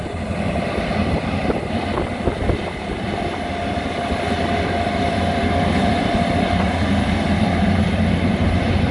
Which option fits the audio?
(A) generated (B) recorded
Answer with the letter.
A